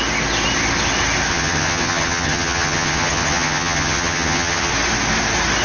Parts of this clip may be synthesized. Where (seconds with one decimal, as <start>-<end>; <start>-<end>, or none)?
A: 1.3-4.7